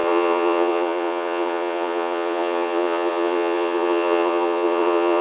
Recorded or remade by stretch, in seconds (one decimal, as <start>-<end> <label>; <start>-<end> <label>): 0.0-5.2 remade